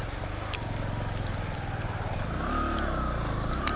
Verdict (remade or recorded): recorded